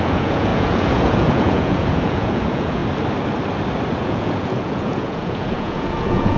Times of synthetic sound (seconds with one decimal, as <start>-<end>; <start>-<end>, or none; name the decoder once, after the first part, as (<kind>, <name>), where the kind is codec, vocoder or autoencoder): 0.0-2.8 (vocoder, Vocos); 3.9-6.4